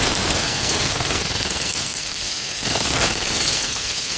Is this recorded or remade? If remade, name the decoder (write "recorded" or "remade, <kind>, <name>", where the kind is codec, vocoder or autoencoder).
remade, codec, SNAC